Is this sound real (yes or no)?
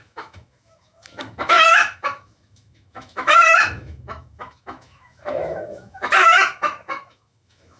no